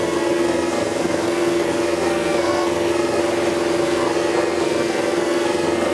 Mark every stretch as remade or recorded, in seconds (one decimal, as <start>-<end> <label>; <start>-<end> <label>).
0.0-3.2 remade; 3.2-3.8 recorded; 3.8-5.9 remade